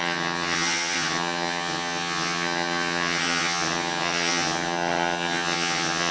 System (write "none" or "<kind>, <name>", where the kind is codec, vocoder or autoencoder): vocoder, HiFi-GAN